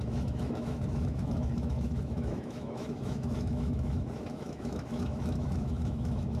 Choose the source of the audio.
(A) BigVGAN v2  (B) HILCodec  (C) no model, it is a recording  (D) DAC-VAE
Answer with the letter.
D